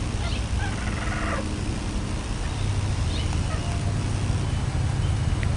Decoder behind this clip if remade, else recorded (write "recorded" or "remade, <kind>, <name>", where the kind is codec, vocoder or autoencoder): recorded